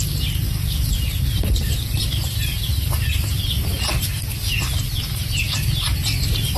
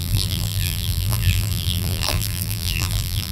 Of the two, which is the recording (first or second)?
first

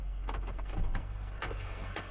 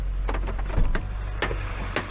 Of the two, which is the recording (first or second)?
second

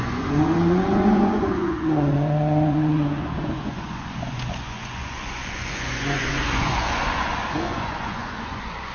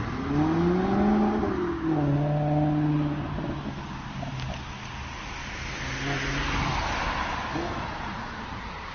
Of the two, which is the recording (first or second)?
second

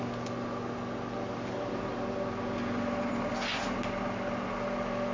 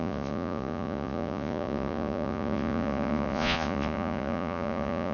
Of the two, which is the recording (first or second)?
first